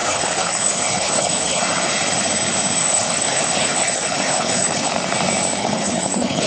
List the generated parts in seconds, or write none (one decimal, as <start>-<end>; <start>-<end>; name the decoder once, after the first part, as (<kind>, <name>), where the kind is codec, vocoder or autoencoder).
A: 0.0-1.6 (codec, HILCodec); 2.8-4.9; 5.6-6.5